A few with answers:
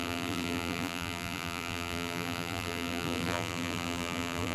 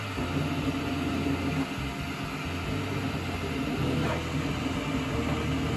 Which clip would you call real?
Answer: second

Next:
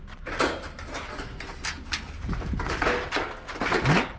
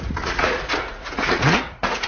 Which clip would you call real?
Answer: first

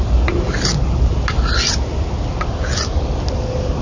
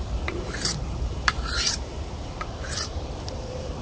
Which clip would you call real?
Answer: first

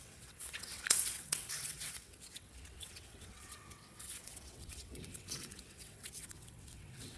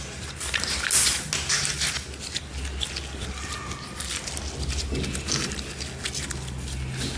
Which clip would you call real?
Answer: second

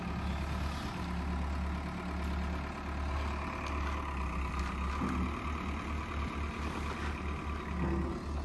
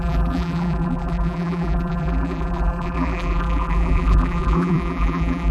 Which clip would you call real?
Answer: first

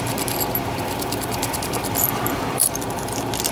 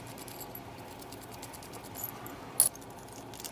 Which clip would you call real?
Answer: second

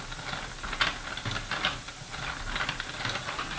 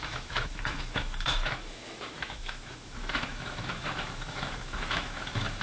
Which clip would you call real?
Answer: first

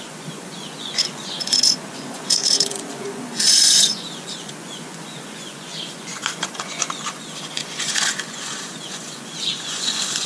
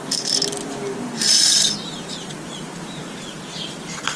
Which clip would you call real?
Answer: second